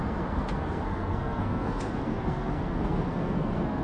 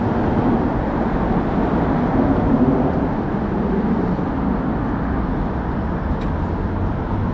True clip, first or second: second